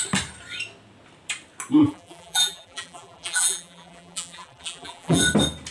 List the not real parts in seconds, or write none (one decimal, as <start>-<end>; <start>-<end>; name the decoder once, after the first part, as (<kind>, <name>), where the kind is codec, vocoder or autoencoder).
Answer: 1.8-5.2 (vocoder, BigVGAN v2)